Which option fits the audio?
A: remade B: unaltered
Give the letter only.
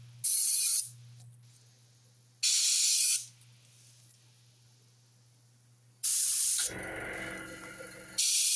B